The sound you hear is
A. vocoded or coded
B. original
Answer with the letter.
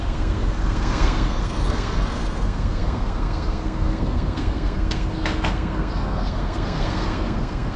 A